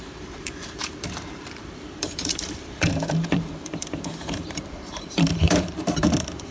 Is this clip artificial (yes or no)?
yes